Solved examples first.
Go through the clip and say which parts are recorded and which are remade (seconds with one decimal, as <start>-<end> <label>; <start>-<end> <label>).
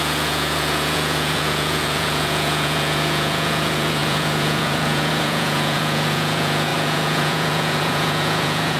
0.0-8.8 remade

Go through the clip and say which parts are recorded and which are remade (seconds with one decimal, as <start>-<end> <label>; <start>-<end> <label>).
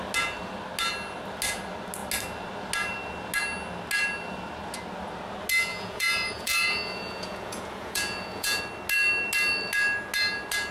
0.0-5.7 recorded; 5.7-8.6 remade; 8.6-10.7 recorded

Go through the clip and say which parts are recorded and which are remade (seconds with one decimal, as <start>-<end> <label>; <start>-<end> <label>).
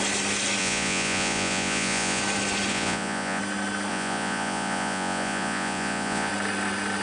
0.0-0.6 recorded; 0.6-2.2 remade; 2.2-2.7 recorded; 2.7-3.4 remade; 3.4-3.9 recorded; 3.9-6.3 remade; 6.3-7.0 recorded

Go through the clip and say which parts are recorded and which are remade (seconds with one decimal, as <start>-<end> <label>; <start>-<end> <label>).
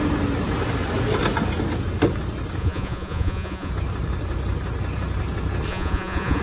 0.0-2.6 recorded; 2.6-3.7 remade; 3.7-5.7 recorded; 5.7-6.4 remade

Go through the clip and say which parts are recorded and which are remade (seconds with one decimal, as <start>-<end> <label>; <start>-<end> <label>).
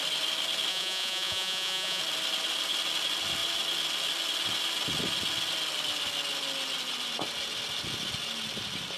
0.0-0.7 recorded; 0.7-2.0 remade; 2.0-9.0 recorded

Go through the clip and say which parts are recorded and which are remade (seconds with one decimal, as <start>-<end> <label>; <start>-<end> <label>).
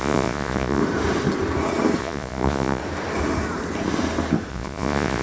0.0-0.8 remade; 0.8-2.0 recorded; 2.0-2.8 remade; 2.8-4.5 recorded; 4.5-5.2 remade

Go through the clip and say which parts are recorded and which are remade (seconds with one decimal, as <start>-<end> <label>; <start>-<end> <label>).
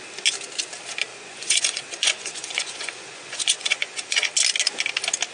0.0-1.1 recorded; 1.1-4.3 remade; 4.3-5.3 recorded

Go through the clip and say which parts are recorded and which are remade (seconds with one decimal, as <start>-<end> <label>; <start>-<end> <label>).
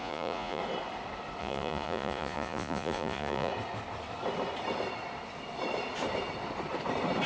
0.0-0.6 remade; 0.6-1.4 recorded; 1.4-3.5 remade; 3.5-7.3 recorded